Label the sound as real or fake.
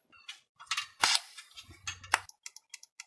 real